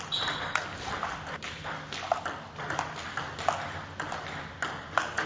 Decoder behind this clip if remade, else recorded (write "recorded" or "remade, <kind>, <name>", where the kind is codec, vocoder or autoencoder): recorded